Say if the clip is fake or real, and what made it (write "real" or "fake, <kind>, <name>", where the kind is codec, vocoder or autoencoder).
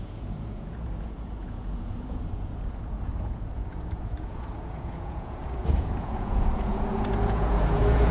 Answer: fake, vocoder, Vocos